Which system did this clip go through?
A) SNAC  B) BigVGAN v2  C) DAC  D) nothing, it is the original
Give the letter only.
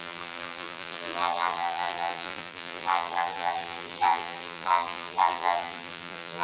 B